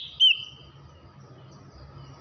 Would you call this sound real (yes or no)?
yes